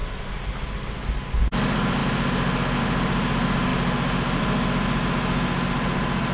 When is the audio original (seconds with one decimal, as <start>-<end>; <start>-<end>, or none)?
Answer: 0.0-6.3